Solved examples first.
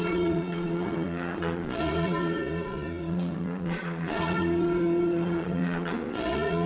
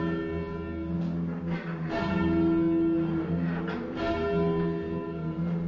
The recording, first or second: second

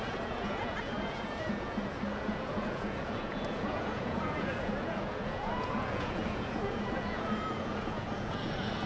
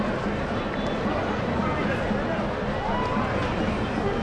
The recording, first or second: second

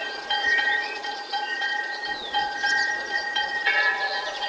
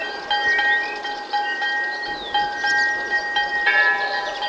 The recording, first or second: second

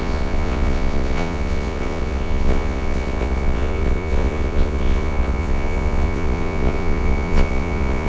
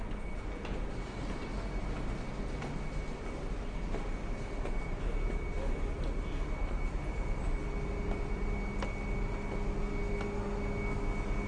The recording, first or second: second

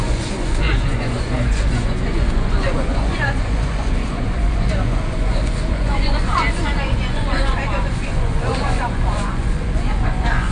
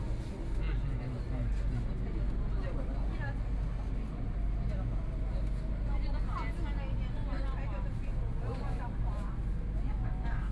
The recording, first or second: second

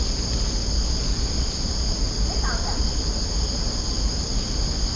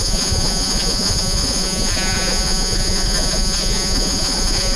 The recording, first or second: first